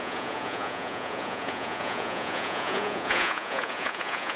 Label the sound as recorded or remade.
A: remade